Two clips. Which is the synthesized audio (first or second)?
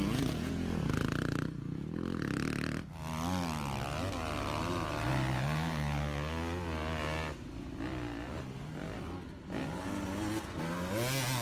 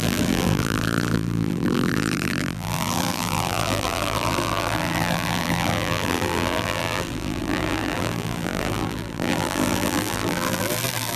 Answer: second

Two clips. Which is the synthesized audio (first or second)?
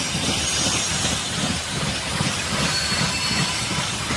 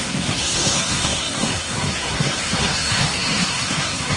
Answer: second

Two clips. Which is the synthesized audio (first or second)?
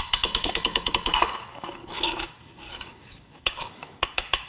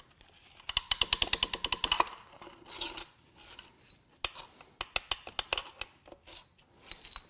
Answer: first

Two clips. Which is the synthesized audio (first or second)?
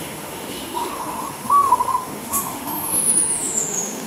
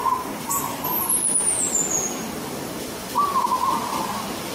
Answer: first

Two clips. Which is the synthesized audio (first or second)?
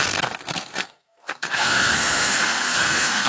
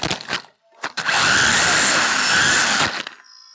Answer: first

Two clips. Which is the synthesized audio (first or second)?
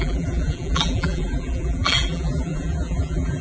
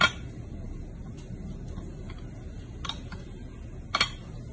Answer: first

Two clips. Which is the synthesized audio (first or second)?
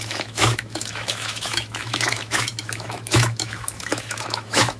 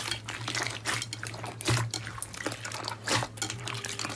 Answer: first